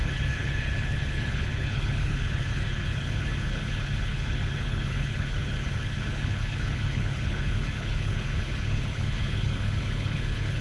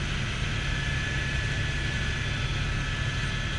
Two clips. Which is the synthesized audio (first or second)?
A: first